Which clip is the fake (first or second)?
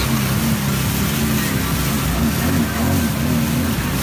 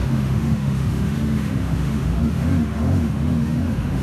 second